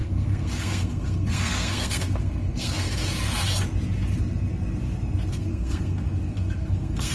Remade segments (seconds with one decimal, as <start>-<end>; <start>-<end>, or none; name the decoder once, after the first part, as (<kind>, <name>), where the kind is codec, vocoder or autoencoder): 0.0-3.0 (codec, SNAC); 5.3-7.1